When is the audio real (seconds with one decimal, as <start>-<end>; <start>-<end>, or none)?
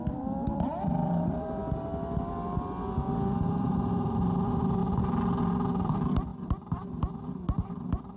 1.6-3.5; 4.8-5.4; 6.3-6.9